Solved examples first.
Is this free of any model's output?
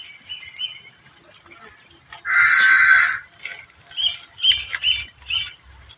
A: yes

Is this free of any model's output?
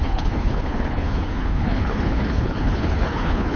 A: no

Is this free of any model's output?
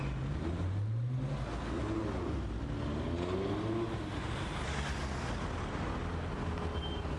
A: yes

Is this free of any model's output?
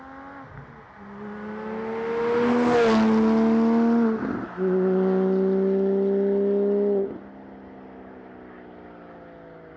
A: yes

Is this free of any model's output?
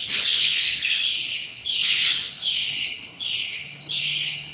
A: no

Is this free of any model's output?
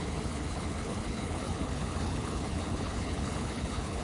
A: no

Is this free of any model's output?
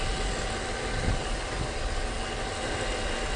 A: yes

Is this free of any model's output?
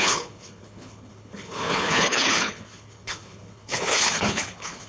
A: no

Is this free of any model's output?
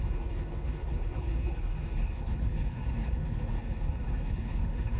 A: no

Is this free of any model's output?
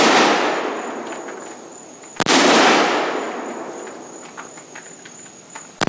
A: yes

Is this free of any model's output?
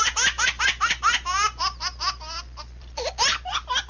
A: yes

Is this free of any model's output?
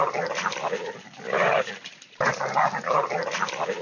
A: yes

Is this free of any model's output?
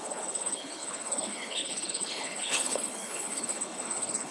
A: no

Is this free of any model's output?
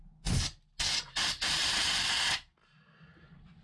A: yes